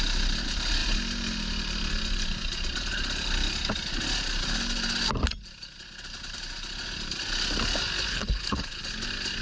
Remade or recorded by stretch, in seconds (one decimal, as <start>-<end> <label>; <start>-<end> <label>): 0.0-8.1 recorded; 8.1-8.8 remade; 8.8-9.4 recorded